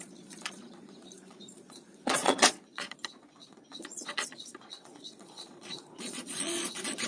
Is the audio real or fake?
fake